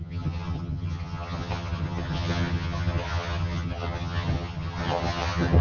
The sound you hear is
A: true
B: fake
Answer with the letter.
B